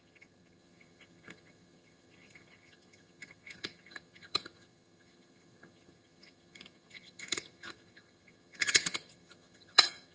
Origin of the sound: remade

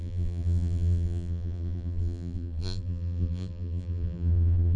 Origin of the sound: remade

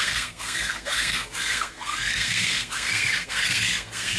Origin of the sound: remade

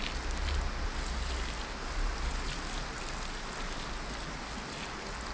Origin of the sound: recorded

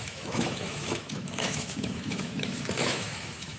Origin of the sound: remade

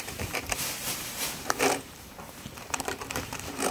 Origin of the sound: remade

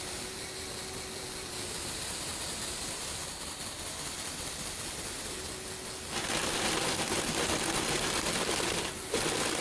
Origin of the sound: recorded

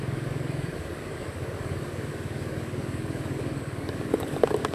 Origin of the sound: remade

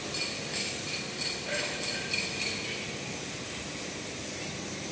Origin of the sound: recorded